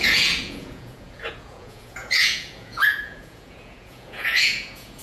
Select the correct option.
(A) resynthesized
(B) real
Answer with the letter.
A